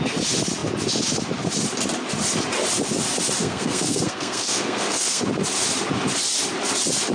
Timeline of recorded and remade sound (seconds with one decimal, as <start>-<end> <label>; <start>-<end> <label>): 0.0-3.4 recorded; 3.4-5.2 remade; 5.2-7.1 recorded